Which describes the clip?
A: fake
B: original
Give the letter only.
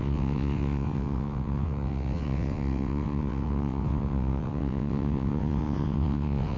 A